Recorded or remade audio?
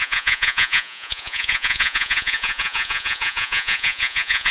remade